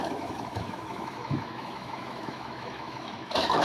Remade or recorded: remade